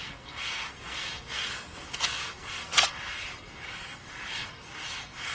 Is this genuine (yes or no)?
no